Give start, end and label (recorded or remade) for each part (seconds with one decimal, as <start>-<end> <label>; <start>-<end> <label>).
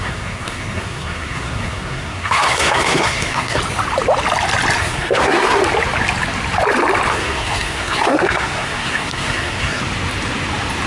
0.0-3.6 remade; 3.6-4.8 recorded; 4.8-5.6 remade; 5.6-7.1 recorded; 7.1-9.8 remade; 9.8-10.9 recorded